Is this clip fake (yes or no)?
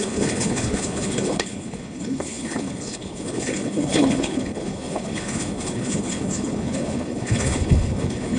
yes